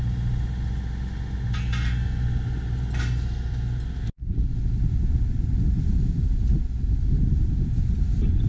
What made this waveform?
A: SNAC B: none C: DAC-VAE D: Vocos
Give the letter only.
B